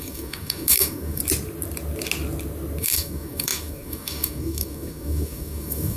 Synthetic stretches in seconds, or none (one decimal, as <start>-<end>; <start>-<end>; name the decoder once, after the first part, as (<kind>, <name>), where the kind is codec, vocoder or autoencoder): 0.0-1.2 (codec, DAC); 2.8-6.0

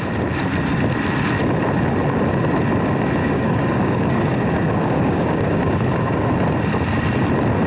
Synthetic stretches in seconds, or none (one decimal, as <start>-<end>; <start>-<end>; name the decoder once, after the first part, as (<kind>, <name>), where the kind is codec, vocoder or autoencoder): 3.2-6.3 (codec, DAC)